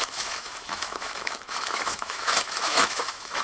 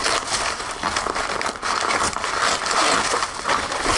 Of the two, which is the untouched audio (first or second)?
second